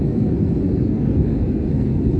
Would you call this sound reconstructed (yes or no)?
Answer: yes